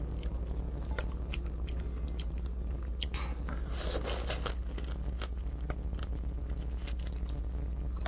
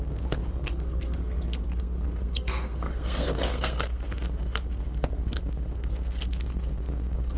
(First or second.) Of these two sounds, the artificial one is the second